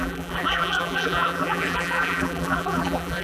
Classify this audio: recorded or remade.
remade